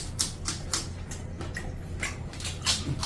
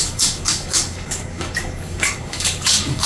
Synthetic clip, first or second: second